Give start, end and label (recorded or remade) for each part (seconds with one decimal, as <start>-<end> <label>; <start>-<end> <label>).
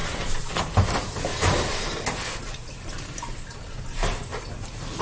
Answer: 0.0-5.0 recorded